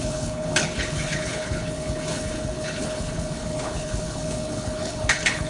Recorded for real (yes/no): no